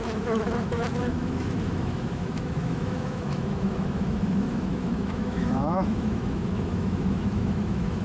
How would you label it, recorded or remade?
remade